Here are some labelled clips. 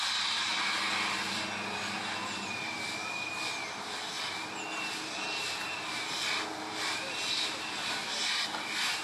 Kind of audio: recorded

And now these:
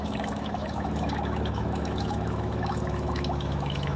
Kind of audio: remade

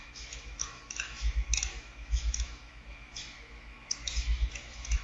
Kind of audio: remade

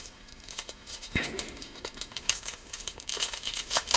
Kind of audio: remade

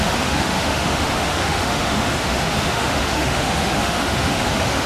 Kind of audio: remade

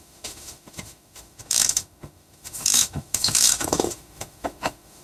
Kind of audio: remade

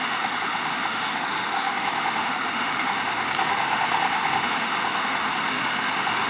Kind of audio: remade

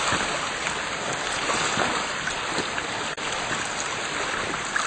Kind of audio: recorded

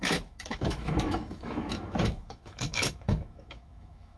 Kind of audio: remade